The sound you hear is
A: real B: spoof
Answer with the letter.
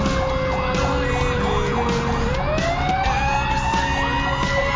A